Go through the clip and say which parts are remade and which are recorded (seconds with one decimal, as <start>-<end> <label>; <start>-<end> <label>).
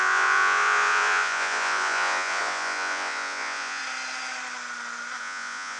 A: 0.0-3.8 remade; 3.8-5.2 recorded; 5.2-5.8 remade